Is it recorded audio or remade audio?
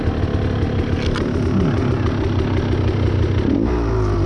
recorded